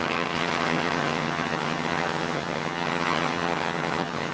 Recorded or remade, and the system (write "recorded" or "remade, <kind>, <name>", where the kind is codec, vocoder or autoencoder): remade, vocoder, HiFi-GAN